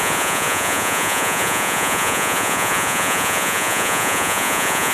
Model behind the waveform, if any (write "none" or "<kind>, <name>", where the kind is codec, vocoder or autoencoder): vocoder, Vocos